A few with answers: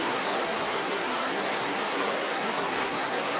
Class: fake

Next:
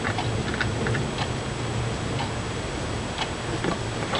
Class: real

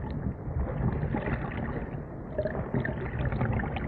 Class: real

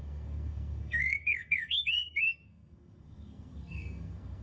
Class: fake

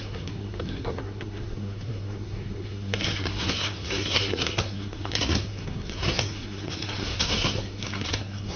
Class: fake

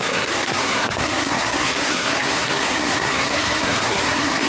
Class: fake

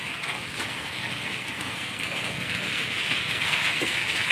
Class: fake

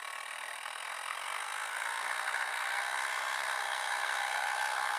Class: fake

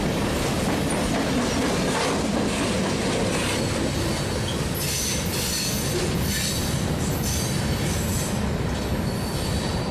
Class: real